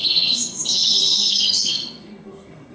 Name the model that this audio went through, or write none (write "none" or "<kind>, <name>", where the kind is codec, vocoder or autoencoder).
codec, SNAC